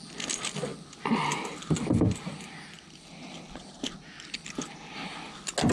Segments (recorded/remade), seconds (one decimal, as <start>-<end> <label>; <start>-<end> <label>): 0.0-5.7 recorded